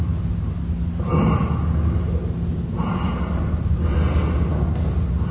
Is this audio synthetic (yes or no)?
no